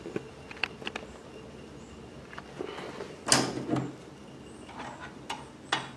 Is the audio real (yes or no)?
yes